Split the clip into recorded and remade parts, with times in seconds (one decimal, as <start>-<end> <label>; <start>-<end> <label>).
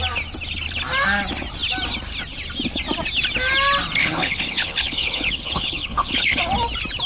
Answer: 0.0-4.0 recorded; 4.0-6.4 remade; 6.4-7.1 recorded